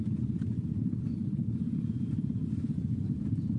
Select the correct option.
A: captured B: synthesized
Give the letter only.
B